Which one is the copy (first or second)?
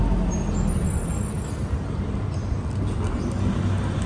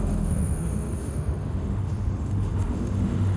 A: second